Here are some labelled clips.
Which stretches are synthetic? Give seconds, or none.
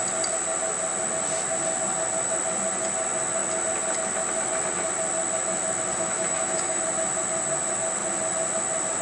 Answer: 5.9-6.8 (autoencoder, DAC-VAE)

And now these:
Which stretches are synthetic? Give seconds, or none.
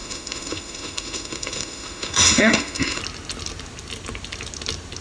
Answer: 0.0-3.0 (autoencoder, DAC-VAE)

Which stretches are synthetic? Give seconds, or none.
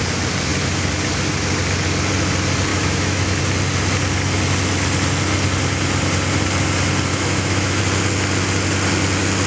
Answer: 2.7-3.4 (autoencoder, DAC-VAE); 7.1-7.8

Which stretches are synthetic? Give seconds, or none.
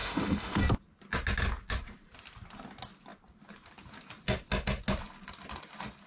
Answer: 0.0-0.6 (autoencoder, DAC-VAE)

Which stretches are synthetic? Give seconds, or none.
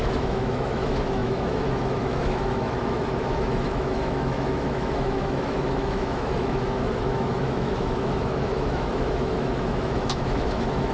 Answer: 0.0-10.9 (autoencoder, DAC-VAE)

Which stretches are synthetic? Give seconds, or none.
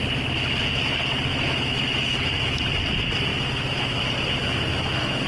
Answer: 1.3-2.6 (autoencoder, DAC-VAE); 3.3-4.0; 4.4-5.3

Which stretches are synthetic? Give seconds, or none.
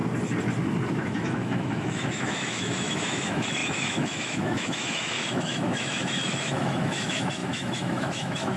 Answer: 0.9-8.6 (autoencoder, DAC-VAE)